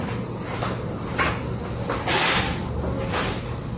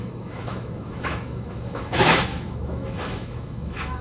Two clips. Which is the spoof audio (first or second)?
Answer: second